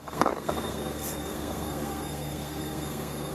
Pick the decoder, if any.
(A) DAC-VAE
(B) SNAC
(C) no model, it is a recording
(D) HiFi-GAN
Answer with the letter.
B